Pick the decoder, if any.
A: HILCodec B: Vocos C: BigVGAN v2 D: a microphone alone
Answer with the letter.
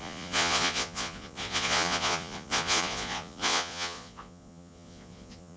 B